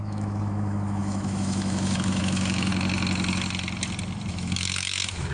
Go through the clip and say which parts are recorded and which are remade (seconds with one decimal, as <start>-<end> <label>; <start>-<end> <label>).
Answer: 0.0-2.7 remade; 2.7-4.3 recorded; 4.3-5.3 remade